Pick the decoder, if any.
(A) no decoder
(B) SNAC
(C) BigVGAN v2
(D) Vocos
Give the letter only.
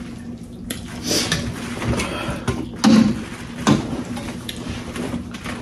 A